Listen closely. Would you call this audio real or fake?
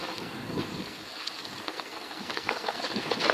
fake